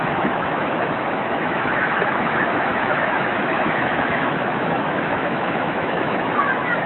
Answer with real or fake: fake